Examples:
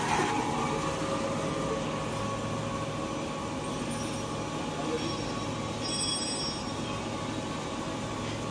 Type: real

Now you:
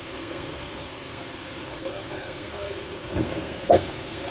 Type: fake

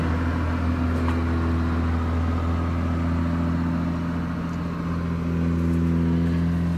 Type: real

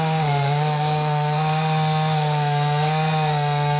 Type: fake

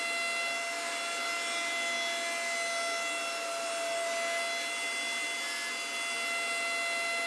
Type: real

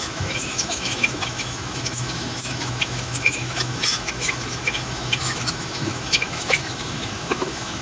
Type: fake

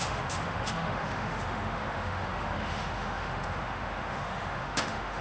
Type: fake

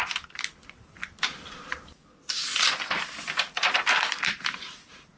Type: real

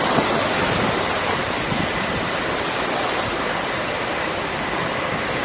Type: real